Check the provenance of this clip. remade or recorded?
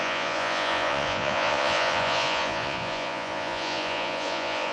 remade